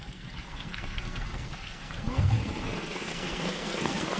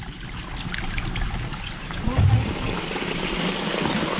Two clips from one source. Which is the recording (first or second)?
second